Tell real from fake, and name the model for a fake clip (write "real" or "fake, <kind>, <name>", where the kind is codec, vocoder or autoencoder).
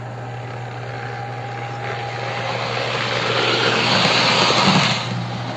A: real